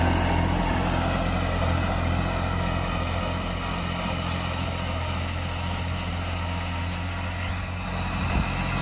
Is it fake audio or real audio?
real